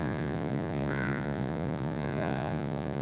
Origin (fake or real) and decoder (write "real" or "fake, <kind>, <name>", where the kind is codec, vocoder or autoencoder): fake, vocoder, Vocos